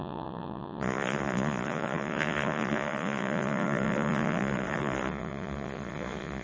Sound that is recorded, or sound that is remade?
remade